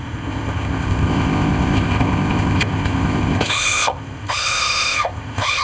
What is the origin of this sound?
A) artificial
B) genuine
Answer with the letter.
A